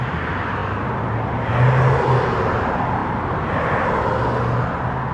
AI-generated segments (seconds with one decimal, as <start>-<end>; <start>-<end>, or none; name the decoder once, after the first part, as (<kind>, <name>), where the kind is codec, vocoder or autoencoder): 0.0-0.6 (vocoder, BigVGAN v2); 2.3-3.0